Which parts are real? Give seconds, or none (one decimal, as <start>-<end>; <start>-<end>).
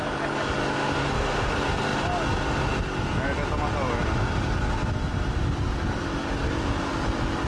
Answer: 0.0-1.0; 1.5-7.5